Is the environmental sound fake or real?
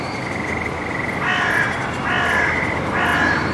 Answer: real